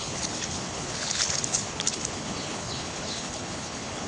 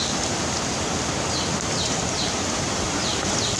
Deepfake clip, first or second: first